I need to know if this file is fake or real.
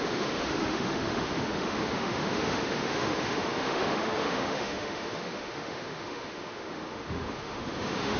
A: fake